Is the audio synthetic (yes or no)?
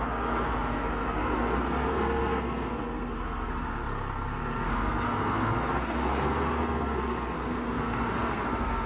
yes